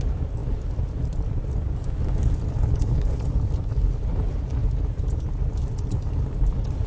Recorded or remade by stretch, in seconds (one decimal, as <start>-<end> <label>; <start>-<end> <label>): 0.0-2.7 recorded; 2.7-3.3 remade; 3.3-6.9 recorded